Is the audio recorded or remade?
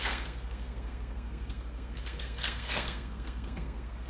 remade